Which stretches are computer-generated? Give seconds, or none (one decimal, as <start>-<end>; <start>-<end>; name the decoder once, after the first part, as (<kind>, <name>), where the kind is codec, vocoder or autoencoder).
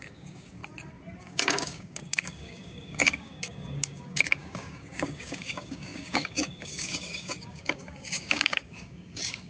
0.0-0.6 (codec, DAC); 1.2-9.5